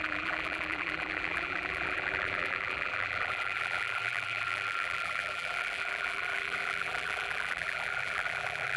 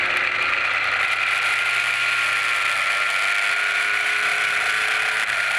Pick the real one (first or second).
second